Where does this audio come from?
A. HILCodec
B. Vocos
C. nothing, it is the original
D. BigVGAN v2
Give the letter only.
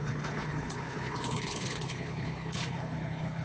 A